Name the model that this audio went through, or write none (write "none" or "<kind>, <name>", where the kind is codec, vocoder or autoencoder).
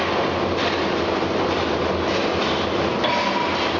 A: none